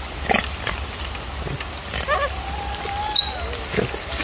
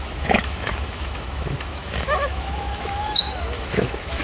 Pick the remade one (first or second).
second